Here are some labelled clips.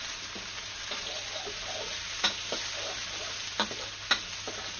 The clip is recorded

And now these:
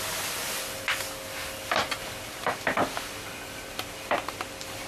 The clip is recorded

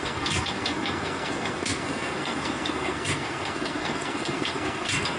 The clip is remade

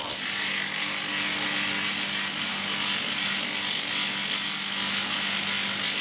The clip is recorded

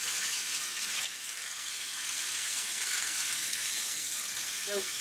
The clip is remade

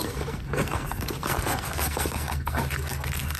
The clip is remade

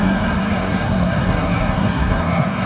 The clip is remade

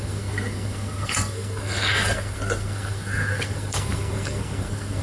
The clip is remade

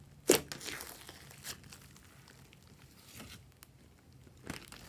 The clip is recorded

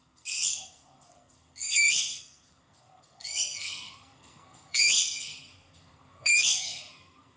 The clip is remade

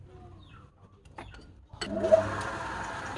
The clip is recorded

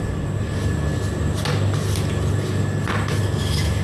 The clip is recorded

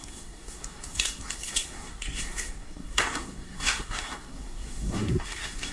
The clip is remade